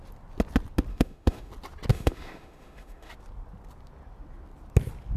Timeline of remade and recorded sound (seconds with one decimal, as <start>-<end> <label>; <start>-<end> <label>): 0.0-0.9 recorded; 0.9-1.5 remade; 1.5-1.9 recorded; 1.9-3.1 remade; 3.1-5.2 recorded